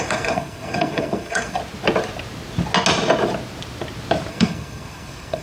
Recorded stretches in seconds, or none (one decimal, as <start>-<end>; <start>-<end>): 1.6-4.3